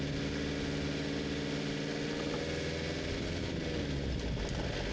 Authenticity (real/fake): real